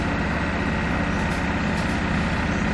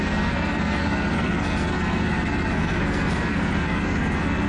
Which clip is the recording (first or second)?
first